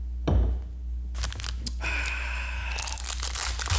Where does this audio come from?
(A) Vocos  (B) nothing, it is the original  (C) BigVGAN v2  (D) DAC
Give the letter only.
B